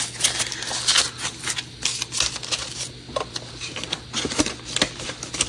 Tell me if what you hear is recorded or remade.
recorded